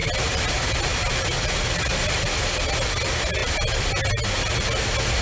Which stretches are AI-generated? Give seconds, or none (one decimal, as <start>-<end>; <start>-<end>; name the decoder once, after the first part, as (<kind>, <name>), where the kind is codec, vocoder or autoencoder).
0.0-0.5 (vocoder, BigVGAN v2); 0.9-1.7; 3.4-3.9